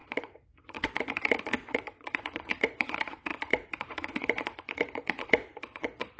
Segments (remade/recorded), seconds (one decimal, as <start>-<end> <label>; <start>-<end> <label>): 0.0-6.2 remade